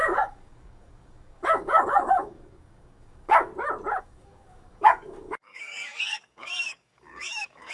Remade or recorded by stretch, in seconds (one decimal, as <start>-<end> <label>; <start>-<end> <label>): 0.0-3.5 remade; 3.5-4.0 recorded; 4.0-7.7 remade